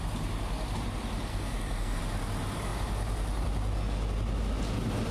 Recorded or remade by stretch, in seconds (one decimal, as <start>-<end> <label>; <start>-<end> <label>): 0.0-1.3 recorded; 1.3-2.0 remade; 2.0-5.1 recorded